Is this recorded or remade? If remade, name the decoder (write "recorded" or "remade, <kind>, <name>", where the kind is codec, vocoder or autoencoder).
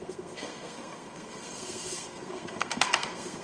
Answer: remade, codec, SNAC